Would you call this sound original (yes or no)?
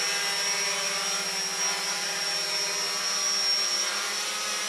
yes